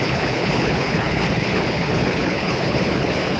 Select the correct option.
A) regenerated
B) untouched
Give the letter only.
A